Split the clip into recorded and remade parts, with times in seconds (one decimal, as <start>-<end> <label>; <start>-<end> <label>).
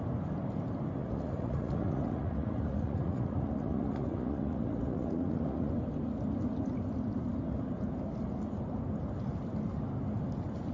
0.0-1.0 recorded; 1.0-5.7 remade; 5.7-10.7 recorded